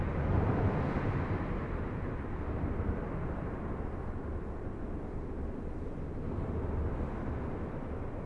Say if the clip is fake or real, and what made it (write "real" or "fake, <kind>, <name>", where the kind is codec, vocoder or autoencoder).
real